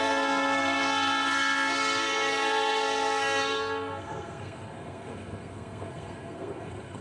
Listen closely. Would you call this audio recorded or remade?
remade